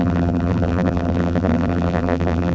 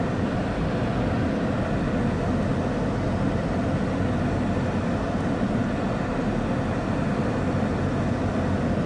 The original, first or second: second